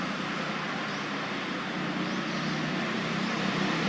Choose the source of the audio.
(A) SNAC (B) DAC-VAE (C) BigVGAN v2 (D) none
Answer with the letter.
D